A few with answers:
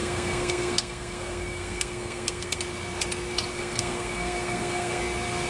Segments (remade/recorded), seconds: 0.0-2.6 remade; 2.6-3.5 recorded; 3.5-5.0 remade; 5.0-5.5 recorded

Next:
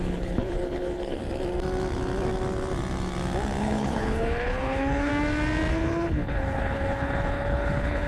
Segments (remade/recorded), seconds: 0.0-1.2 remade; 1.2-3.6 recorded; 3.6-5.1 remade; 5.1-5.7 recorded; 5.7-8.1 remade

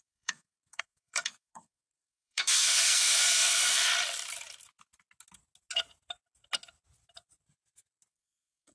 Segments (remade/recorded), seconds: 0.0-3.9 remade; 3.9-8.1 recorded; 8.1-8.7 remade

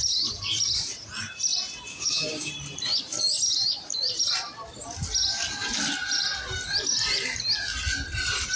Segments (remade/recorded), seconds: 0.0-1.9 recorded; 1.9-2.5 remade; 2.5-8.6 recorded